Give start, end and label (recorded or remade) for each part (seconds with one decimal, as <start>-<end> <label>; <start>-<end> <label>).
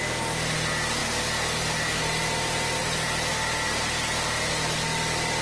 0.0-5.4 recorded